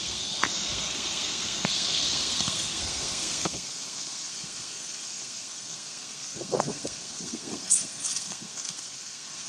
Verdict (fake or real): fake